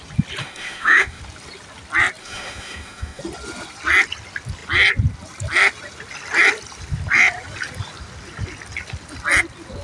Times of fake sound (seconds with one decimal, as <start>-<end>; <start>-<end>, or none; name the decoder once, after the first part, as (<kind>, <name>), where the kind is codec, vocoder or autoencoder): 0.4-1.2 (autoencoder, DAC-VAE); 2.2-3.2